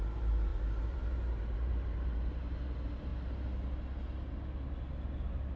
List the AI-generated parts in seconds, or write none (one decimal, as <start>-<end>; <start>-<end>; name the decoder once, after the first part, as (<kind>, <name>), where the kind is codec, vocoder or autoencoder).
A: 0.0-3.1 (vocoder, BigVGAN v2)